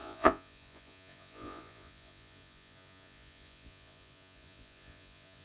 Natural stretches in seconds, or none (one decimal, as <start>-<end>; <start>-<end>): none